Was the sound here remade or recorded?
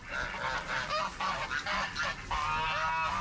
recorded